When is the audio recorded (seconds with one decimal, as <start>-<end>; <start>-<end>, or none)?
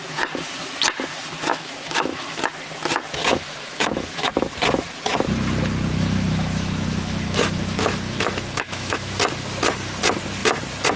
0.0-1.5; 2.4-3.2; 4.3-5.9; 9.1-11.0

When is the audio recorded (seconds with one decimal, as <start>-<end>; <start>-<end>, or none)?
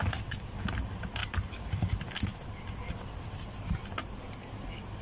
0.0-5.0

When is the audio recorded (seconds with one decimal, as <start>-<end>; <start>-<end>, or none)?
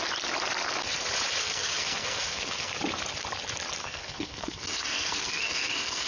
0.0-1.4; 2.7-3.8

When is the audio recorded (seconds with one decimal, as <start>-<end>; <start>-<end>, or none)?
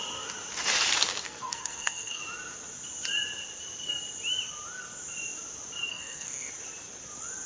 0.0-1.2; 2.2-5.9; 6.5-7.5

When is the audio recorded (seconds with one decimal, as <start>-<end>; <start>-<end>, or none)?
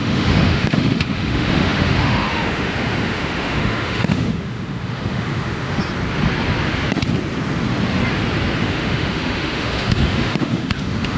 5.8-8.6